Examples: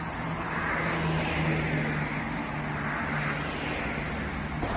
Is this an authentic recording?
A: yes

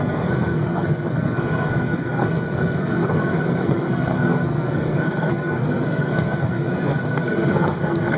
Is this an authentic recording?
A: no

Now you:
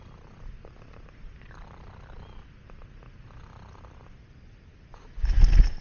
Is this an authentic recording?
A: yes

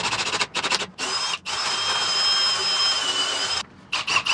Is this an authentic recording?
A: yes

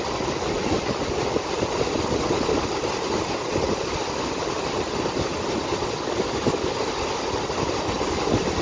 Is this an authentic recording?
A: yes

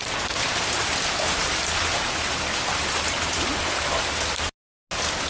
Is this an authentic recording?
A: yes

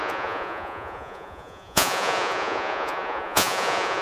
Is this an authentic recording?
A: no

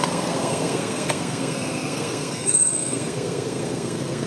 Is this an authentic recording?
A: no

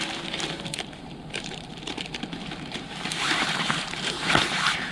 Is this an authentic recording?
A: no